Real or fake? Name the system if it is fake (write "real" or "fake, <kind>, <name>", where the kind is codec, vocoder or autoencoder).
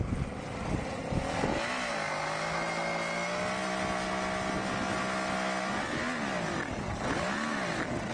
real